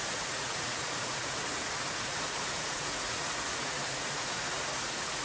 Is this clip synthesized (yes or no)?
yes